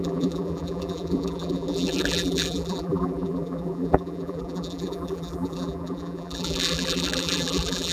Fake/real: fake